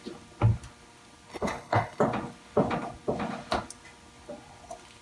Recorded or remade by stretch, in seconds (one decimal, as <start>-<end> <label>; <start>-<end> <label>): 0.0-1.3 recorded; 1.3-2.0 remade; 2.0-5.0 recorded